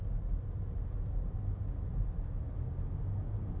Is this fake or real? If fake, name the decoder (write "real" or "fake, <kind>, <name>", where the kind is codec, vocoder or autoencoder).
real